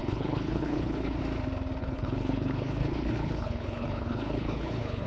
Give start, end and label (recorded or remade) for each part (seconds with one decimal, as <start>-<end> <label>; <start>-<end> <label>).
0.0-1.2 remade; 1.2-1.8 recorded; 1.8-5.1 remade